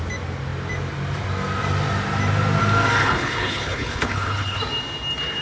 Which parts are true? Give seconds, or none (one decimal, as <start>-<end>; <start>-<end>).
0.0-3.0; 4.6-5.4